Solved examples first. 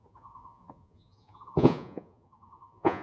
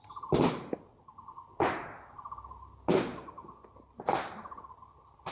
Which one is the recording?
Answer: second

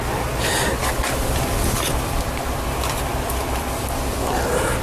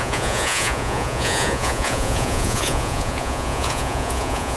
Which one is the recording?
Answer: first